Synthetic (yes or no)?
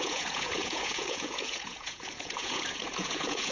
yes